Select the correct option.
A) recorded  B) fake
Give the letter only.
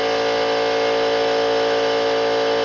A